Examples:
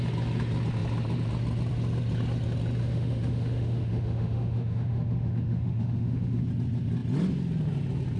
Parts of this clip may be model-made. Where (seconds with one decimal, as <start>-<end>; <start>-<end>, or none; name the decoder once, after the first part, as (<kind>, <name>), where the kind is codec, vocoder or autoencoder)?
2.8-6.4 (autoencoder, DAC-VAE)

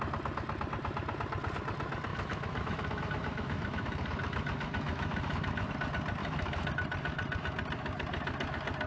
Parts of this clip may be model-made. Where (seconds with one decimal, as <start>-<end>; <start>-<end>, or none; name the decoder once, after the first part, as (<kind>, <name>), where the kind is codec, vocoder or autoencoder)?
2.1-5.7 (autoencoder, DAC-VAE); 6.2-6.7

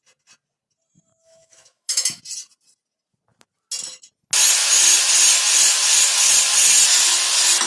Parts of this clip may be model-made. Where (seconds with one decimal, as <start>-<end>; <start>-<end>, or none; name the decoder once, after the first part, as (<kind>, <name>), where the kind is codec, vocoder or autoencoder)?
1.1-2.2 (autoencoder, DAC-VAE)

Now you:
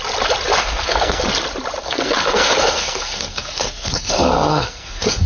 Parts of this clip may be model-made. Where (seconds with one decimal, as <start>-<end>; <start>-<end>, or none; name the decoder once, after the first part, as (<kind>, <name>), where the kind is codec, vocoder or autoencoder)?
0.6-1.2 (codec, SNAC); 1.8-5.3

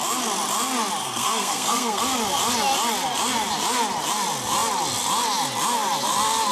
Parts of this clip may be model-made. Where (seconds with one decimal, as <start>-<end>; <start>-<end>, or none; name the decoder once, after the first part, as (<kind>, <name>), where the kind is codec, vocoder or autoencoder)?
1.0-2.0 (codec, SNAC)